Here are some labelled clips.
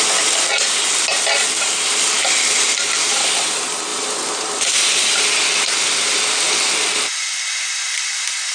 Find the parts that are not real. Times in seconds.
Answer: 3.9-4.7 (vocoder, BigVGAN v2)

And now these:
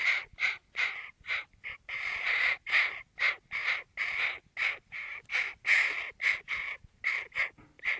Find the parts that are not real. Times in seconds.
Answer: 0.0-0.5 (vocoder, BigVGAN v2)

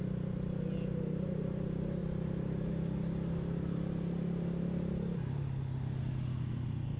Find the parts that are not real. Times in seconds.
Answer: none

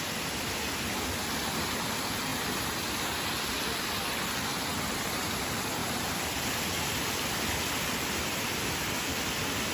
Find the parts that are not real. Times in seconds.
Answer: 4.5-5.2 (vocoder, BigVGAN v2); 5.8-6.4

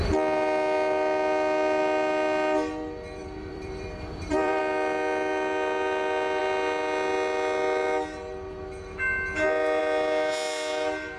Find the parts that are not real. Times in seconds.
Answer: 3.2-4.6 (vocoder, BigVGAN v2)

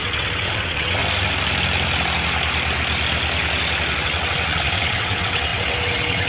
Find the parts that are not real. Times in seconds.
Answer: 0.0-1.0 (vocoder, WaveNeXt); 4.0-6.3

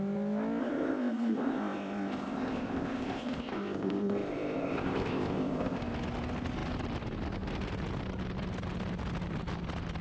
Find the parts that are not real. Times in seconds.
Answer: 0.6-5.8 (codec, ZipCodec)

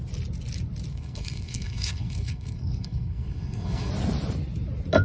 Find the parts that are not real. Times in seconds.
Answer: 0.9-3.9 (codec, SNAC)